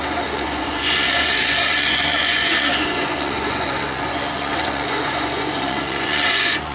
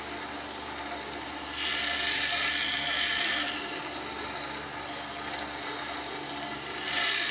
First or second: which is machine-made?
first